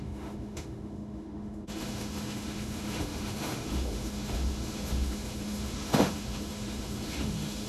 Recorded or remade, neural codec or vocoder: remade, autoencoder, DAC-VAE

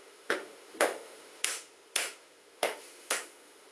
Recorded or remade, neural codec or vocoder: remade, autoencoder, DAC-VAE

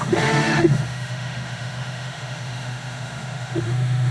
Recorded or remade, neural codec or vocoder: remade, autoencoder, DAC-VAE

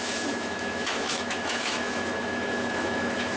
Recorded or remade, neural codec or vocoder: remade, autoencoder, DAC-VAE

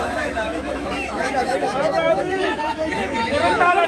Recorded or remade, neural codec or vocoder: remade, autoencoder, DAC-VAE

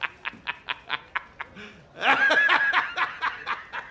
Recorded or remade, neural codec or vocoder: recorded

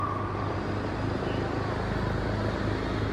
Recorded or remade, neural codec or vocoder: recorded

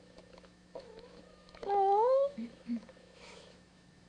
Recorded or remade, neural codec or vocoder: remade, autoencoder, DAC-VAE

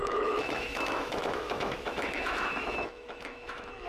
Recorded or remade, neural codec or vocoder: remade, autoencoder, DAC-VAE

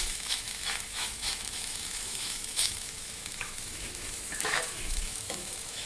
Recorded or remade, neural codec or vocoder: remade, autoencoder, DAC-VAE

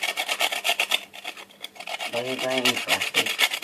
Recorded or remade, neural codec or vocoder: recorded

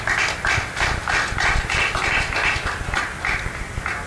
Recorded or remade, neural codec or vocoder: recorded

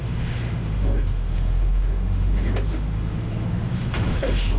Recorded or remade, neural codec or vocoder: remade, autoencoder, DAC-VAE